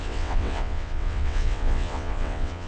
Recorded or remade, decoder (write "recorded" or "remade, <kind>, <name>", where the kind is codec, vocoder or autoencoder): remade, vocoder, WaveNeXt